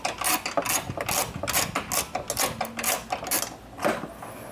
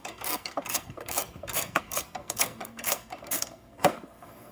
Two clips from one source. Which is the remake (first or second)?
second